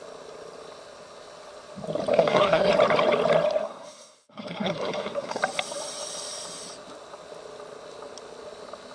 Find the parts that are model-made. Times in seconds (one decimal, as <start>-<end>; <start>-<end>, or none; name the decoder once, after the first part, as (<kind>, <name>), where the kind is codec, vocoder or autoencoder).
2.1-2.7 (codec, SNAC); 3.6-5.4